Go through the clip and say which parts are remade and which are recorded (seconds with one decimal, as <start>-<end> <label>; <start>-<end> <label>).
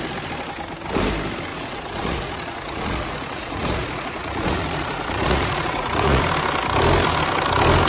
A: 0.0-1.5 recorded; 1.5-6.2 remade; 6.2-7.9 recorded